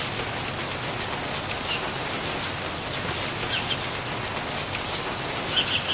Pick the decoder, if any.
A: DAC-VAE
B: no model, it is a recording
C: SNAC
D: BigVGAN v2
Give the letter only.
B